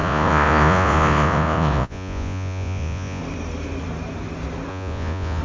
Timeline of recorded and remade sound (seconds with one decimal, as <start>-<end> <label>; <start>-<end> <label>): 0.0-3.2 remade; 3.2-4.7 recorded; 4.7-5.4 remade